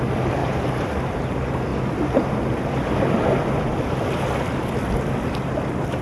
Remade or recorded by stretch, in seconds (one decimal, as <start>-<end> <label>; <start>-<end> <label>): 0.0-0.4 recorded; 0.4-1.2 remade; 1.2-6.0 recorded